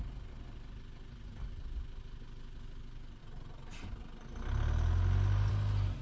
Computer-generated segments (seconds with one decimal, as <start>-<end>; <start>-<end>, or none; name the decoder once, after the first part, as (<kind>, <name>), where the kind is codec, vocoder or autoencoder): none